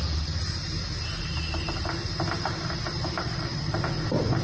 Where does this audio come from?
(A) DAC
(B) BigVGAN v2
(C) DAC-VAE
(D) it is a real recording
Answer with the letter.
D